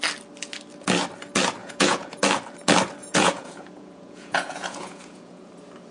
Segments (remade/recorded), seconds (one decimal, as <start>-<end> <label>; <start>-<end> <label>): 0.0-1.6 recorded; 1.6-2.2 remade; 2.2-3.0 recorded; 3.0-5.5 remade; 5.5-5.9 recorded